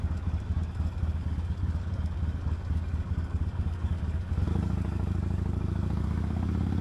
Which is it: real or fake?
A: fake